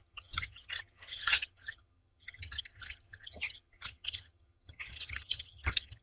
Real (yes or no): no